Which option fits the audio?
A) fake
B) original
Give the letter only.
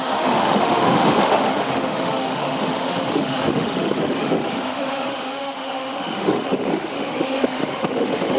A